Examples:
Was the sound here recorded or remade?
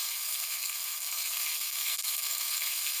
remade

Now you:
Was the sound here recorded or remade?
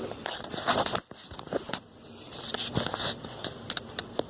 recorded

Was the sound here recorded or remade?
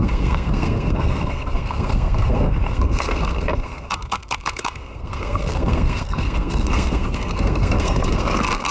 remade